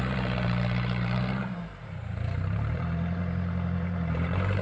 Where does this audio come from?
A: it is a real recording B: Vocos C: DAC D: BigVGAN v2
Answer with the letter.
D